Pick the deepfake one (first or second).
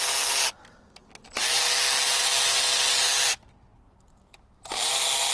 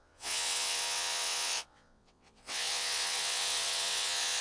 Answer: second